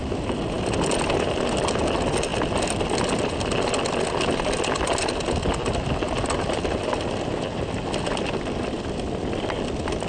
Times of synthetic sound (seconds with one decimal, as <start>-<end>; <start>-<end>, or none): none